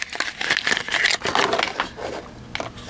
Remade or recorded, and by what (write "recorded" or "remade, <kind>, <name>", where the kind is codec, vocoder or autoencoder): recorded